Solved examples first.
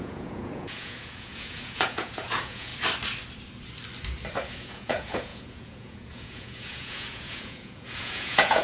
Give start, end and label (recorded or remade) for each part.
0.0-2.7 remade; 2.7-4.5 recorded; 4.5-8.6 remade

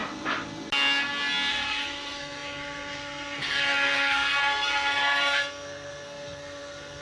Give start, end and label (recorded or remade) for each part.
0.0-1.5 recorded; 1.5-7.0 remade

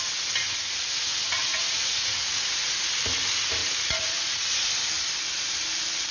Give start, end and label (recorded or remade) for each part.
0.0-1.5 recorded; 1.5-2.4 remade; 2.4-3.6 recorded; 3.6-4.7 remade; 4.7-6.1 recorded